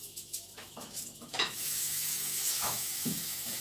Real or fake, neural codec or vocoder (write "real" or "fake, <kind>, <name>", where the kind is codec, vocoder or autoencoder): fake, autoencoder, DAC-VAE